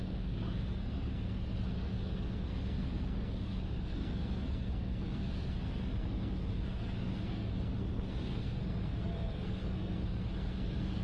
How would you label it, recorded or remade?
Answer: remade